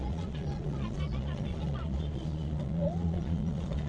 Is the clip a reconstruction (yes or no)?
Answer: yes